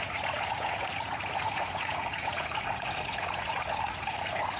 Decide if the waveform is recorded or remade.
remade